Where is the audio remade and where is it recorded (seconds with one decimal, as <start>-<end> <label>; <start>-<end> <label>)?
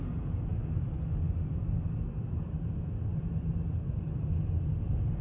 0.0-5.2 recorded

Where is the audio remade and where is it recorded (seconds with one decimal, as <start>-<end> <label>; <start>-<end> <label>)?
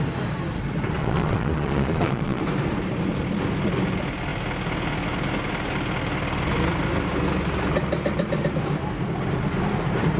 0.0-1.0 recorded; 1.0-2.4 remade; 2.4-10.2 recorded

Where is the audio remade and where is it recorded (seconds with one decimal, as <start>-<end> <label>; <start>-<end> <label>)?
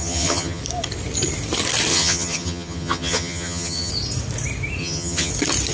0.0-0.6 remade; 0.6-1.9 recorded; 1.9-3.9 remade; 3.9-4.8 recorded; 4.8-5.3 remade; 5.3-5.7 recorded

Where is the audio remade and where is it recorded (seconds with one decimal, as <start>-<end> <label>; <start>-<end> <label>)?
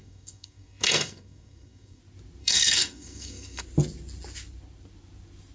0.0-2.0 remade; 2.0-2.4 recorded; 2.4-3.6 remade; 3.6-5.5 recorded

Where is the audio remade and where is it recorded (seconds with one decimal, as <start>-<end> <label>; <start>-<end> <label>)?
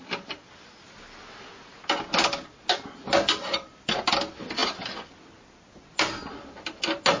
0.0-4.6 recorded; 4.6-5.1 remade; 5.1-7.2 recorded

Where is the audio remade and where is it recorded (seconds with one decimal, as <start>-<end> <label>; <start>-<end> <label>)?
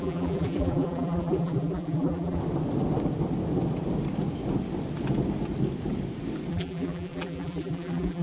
0.0-2.4 remade; 2.4-6.5 recorded; 6.5-8.2 remade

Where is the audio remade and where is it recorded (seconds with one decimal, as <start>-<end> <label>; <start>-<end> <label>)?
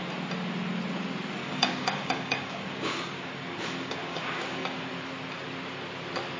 0.0-1.4 recorded; 1.4-4.9 remade; 4.9-6.4 recorded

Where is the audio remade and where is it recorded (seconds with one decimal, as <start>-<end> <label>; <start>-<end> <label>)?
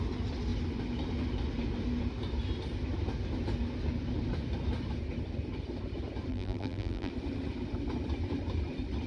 0.0-6.3 recorded; 6.3-7.1 remade; 7.1-9.1 recorded